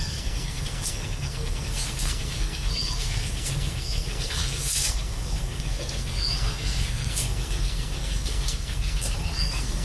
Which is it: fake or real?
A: fake